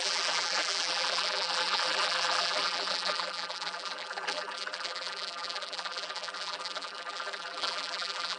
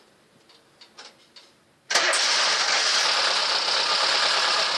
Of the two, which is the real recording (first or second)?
second